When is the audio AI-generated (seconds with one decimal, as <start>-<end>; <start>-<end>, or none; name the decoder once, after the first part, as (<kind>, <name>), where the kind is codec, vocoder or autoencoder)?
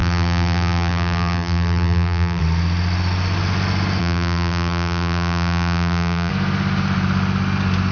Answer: 0.0-2.4 (vocoder, BigVGAN v2); 4.0-6.3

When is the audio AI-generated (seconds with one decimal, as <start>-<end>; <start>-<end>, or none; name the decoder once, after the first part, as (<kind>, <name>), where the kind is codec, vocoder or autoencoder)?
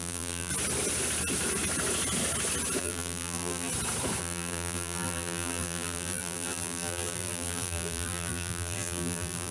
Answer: 0.0-0.5 (vocoder, BigVGAN v2); 2.8-3.7; 4.2-9.5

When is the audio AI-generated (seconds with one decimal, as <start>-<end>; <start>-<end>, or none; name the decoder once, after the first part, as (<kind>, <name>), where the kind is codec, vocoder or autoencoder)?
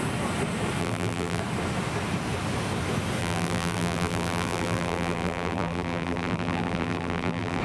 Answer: 0.8-1.4 (vocoder, BigVGAN v2); 3.2-7.6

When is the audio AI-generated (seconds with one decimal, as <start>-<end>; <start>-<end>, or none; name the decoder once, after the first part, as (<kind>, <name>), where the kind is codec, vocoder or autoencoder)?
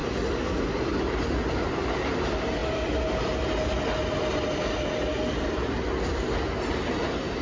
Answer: none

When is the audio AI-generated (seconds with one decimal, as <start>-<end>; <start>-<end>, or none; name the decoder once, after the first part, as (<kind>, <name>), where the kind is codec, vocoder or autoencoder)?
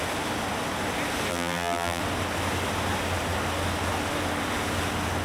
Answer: 1.3-2.0 (vocoder, BigVGAN v2)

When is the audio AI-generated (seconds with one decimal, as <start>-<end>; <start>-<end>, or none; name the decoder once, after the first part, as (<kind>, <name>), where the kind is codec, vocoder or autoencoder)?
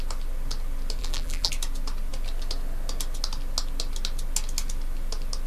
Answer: 1.0-1.5 (vocoder, BigVGAN v2)